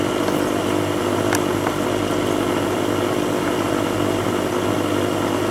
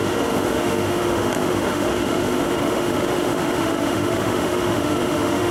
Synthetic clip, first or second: second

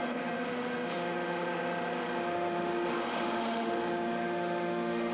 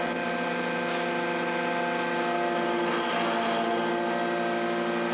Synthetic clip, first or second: first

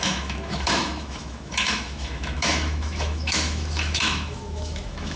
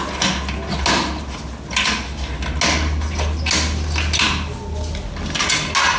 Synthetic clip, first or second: first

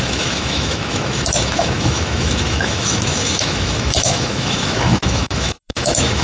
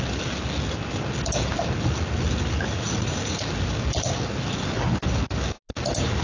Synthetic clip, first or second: first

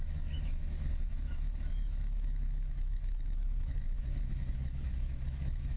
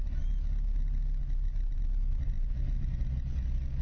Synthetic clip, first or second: first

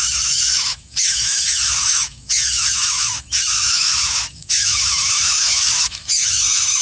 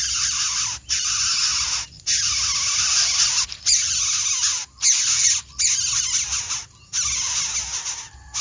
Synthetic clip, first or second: first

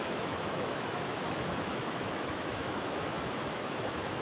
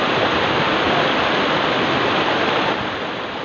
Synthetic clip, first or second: first